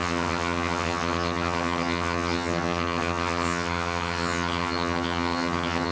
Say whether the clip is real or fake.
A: fake